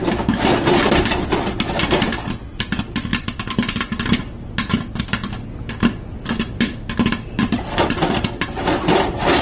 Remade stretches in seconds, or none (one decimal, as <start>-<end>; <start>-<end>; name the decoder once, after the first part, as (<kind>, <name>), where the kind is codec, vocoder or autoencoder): none